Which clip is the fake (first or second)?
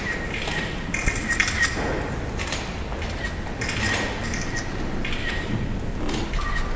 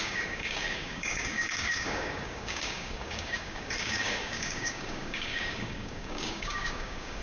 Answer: second